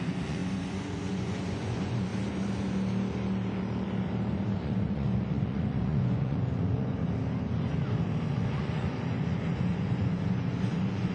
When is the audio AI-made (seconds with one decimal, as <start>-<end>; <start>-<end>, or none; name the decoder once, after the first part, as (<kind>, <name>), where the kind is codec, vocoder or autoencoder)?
0.0-2.1 (vocoder, Vocos); 4.5-7.0; 8.3-11.1